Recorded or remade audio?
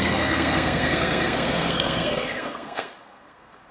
remade